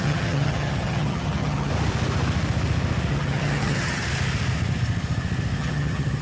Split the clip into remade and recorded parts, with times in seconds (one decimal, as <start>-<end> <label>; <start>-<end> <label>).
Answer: 0.0-1.7 remade; 1.7-3.1 recorded; 3.1-4.0 remade; 4.0-5.6 recorded; 5.6-6.2 remade